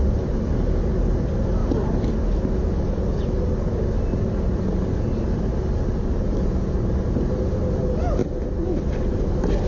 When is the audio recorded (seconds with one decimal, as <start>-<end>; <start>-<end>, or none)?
0.0-9.7